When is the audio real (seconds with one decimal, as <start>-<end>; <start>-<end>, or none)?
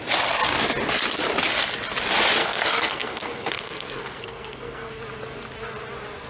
0.0-2.4; 4.9-6.3